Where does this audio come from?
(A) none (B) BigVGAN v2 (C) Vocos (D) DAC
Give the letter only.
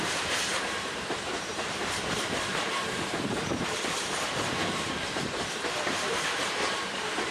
B